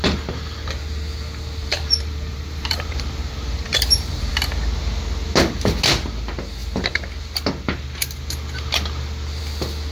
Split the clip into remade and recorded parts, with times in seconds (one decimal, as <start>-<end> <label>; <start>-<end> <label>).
0.0-1.6 recorded; 1.6-4.3 remade; 4.3-9.9 recorded